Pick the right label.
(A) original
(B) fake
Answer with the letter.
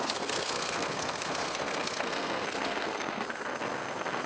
B